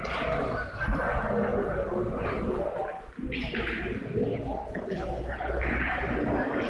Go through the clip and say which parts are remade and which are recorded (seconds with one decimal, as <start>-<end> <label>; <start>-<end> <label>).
0.0-4.3 recorded; 4.3-5.9 remade; 5.9-6.7 recorded